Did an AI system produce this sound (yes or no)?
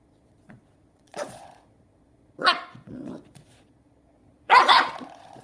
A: yes